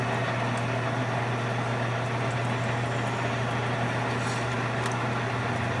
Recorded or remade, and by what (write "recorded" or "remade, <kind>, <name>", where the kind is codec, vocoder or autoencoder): recorded